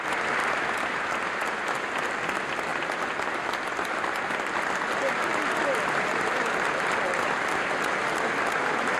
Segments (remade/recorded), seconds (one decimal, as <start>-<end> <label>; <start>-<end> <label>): 0.0-9.0 recorded